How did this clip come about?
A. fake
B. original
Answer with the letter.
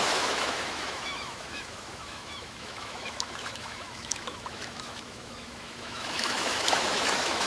A